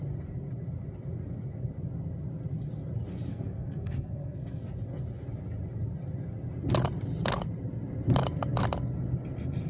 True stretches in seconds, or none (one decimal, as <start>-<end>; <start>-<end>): 0.0-3.3; 4.6-9.7